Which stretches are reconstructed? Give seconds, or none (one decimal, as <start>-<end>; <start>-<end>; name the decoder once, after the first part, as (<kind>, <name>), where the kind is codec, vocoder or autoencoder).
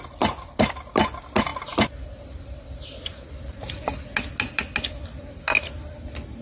none